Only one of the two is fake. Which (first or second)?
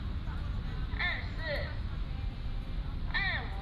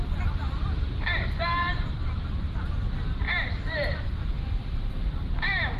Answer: second